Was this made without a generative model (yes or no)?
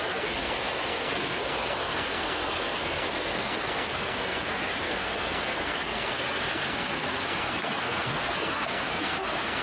no